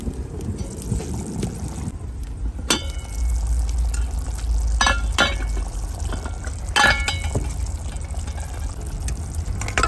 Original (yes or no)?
yes